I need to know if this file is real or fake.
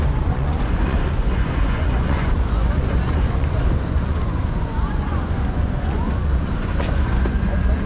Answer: fake